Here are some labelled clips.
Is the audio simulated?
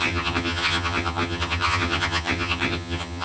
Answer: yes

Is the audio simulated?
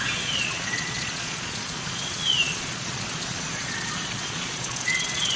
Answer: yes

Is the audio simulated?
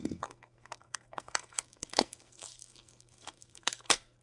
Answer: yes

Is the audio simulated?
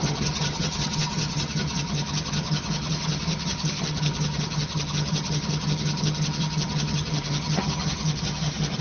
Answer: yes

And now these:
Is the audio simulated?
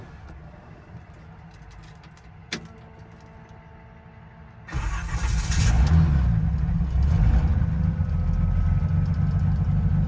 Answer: no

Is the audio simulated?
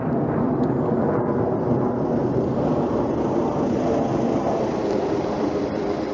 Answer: no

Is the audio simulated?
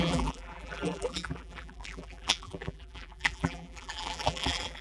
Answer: yes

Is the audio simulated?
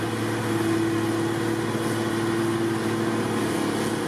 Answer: no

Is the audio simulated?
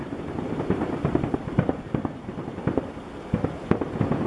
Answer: yes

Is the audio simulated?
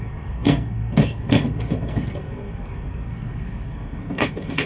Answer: yes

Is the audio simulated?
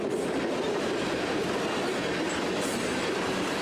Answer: no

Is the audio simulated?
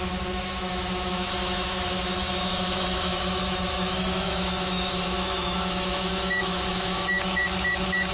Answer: yes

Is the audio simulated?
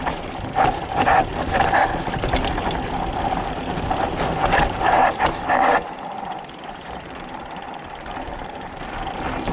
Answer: yes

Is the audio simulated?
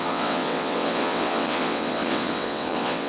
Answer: yes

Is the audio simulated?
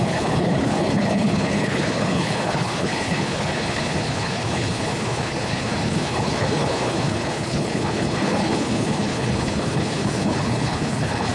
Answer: yes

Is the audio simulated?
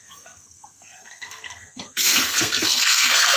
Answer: yes